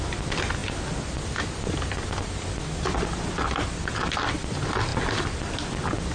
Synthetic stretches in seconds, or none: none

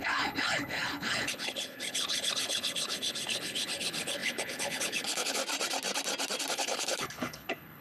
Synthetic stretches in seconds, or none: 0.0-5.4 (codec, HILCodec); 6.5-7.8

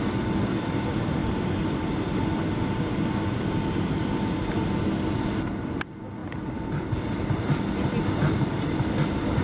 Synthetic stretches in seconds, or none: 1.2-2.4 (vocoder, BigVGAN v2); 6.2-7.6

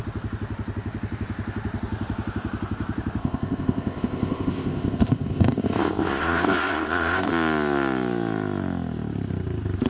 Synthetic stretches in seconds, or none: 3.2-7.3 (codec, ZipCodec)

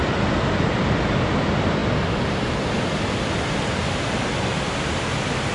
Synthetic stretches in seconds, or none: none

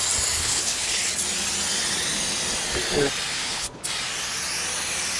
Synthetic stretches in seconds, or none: 0.4-1.0 (codec, HILCodec); 3.3-3.8

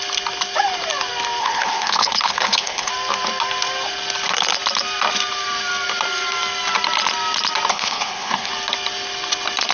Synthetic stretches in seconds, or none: 1.4-2.9 (codec, HILCodec); 7.7-8.5

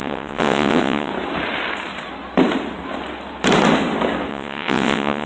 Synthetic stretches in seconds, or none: 0.0-1.1 (vocoder, WaveNeXt); 4.3-5.3